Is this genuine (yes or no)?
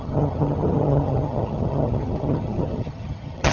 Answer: no